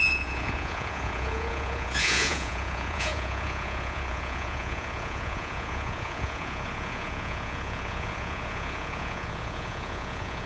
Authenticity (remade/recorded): remade